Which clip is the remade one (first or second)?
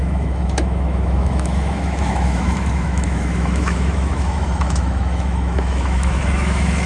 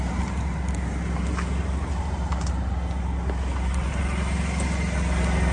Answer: first